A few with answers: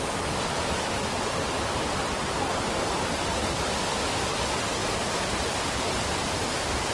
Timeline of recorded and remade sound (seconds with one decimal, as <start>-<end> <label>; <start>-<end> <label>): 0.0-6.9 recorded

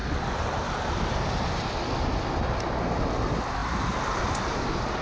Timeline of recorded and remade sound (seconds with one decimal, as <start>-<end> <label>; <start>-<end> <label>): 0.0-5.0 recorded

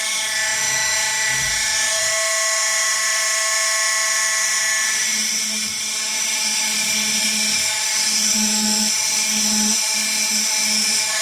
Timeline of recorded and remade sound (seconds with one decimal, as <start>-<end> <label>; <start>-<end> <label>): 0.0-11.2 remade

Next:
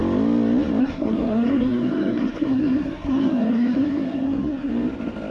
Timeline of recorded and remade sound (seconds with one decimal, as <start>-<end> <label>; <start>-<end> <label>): 0.0-0.8 recorded; 0.8-4.7 remade; 4.7-5.3 recorded